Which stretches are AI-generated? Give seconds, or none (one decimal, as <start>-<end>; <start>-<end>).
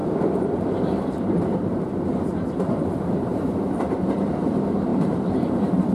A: 0.0-1.7; 2.3-4.5; 4.9-5.9